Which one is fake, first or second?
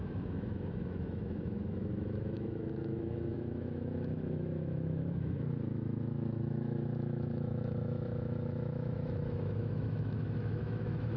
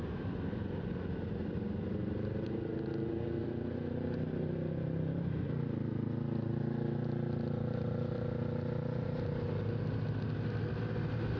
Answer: first